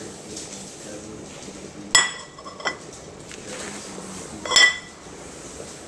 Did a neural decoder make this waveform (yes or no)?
no